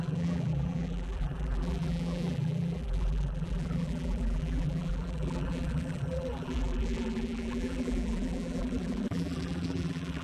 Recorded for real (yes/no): no